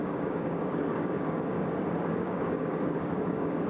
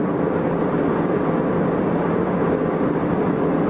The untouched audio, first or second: second